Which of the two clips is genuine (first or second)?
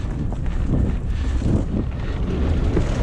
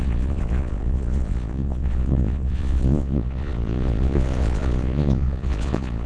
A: first